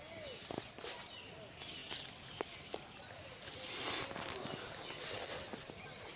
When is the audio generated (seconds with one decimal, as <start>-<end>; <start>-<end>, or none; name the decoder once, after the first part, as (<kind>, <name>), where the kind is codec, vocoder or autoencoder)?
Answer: none